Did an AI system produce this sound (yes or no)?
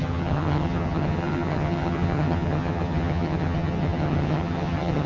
yes